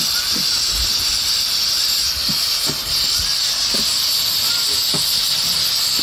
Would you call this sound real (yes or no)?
yes